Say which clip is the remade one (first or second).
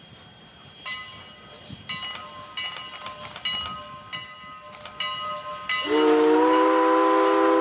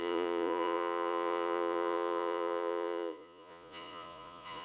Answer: second